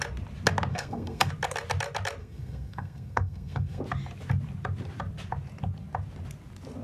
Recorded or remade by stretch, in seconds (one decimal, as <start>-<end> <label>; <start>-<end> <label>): 0.0-0.7 recorded; 0.7-1.3 remade; 1.3-2.2 recorded; 2.2-3.8 remade; 3.8-6.8 recorded